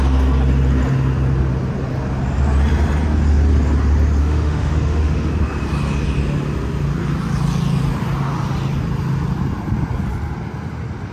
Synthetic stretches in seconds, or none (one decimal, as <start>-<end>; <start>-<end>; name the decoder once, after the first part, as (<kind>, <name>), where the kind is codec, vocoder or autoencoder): 4.2-5.3 (autoencoder, DAC-VAE)